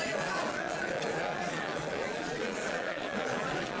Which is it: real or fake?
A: fake